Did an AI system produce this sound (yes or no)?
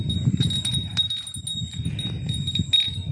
no